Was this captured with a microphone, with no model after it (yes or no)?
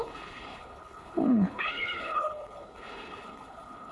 no